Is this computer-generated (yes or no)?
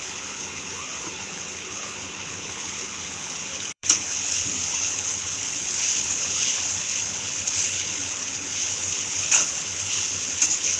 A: yes